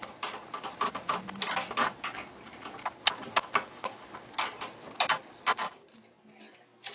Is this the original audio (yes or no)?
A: yes